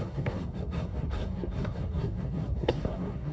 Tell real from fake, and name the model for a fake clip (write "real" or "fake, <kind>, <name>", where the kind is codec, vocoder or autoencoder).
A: fake, codec, SNAC